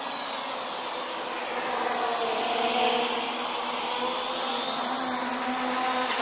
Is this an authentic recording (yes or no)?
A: yes